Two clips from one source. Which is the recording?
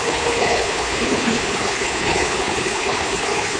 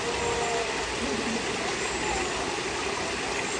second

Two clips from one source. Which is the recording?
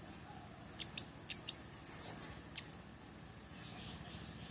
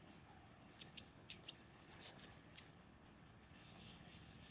first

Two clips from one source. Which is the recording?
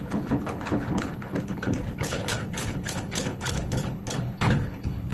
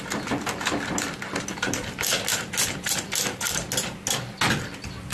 second